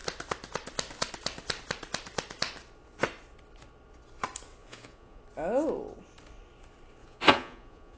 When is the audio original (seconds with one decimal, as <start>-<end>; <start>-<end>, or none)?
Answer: 0.0-4.6; 5.2-7.0